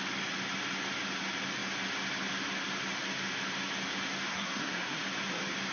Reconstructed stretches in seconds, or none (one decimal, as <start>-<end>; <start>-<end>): 4.3-5.0